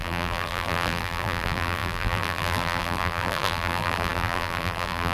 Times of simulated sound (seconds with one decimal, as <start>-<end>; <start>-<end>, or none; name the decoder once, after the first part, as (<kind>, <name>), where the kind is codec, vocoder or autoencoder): 0.0-5.1 (vocoder, BigVGAN v2)

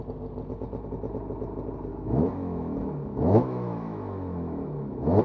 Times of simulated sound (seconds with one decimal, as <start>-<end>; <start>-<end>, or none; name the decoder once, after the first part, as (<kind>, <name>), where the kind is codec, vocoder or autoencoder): 1.9-5.2 (autoencoder, DAC-VAE)

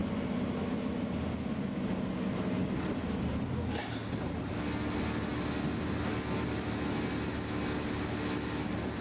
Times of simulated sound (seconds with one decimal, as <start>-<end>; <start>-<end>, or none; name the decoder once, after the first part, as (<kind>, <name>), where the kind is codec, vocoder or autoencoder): none